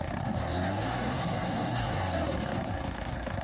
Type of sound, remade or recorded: remade